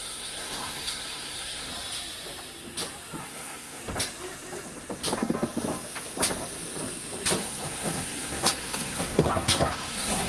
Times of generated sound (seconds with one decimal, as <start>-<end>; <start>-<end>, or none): 0.0-1.7; 3.2-3.8; 7.4-10.3